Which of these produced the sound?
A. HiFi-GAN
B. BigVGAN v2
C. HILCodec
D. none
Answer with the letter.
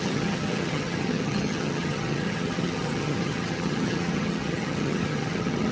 A